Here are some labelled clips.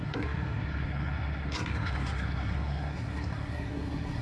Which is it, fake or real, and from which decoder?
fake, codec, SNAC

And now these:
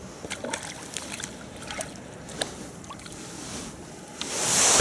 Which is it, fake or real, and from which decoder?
real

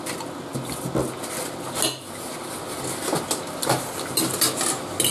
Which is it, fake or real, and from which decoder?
real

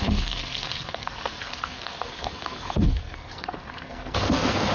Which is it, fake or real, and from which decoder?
fake, codec, SNAC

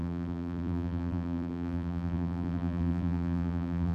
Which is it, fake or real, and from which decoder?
fake, vocoder, BigVGAN v2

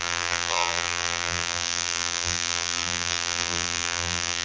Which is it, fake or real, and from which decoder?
fake, vocoder, BigVGAN v2